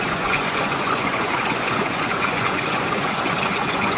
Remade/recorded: remade